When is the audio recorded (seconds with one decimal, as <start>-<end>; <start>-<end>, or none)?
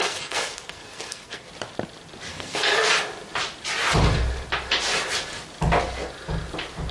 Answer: 1.5-2.3; 2.9-6.9